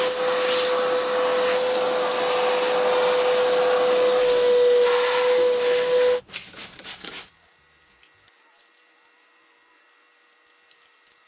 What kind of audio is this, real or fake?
real